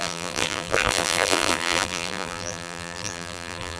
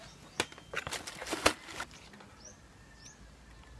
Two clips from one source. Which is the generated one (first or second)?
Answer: first